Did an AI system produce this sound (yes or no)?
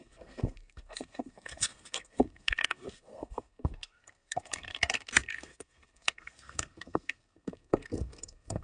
yes